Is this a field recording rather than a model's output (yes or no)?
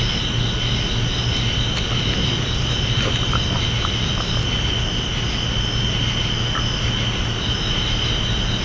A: yes